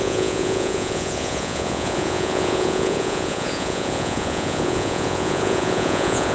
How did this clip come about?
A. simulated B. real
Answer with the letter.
A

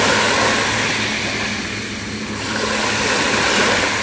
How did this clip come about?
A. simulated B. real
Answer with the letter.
B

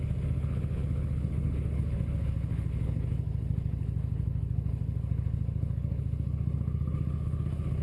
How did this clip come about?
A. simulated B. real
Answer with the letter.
A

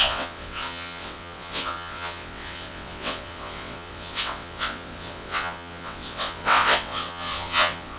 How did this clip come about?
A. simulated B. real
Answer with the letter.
A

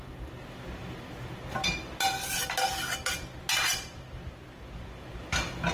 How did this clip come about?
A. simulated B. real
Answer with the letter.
B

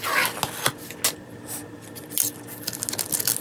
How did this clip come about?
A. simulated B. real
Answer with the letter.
B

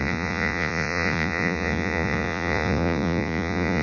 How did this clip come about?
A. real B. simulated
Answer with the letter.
B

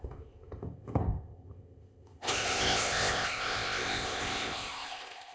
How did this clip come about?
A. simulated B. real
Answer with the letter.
A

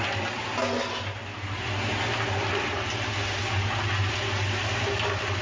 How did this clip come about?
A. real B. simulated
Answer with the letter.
A